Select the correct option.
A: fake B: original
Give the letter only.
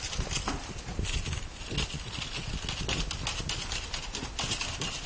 B